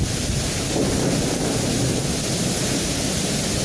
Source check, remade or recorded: recorded